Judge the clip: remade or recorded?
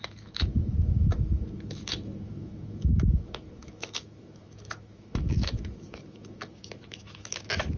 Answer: remade